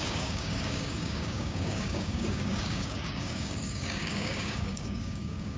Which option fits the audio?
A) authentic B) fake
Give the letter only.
B